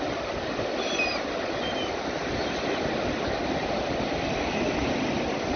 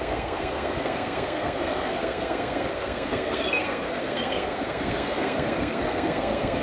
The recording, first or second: first